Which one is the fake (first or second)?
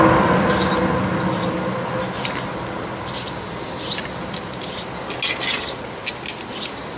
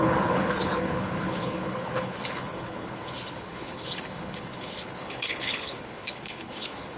second